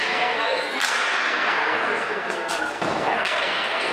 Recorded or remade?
remade